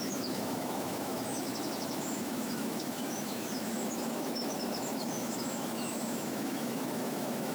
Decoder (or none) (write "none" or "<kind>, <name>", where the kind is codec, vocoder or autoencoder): autoencoder, DAC-VAE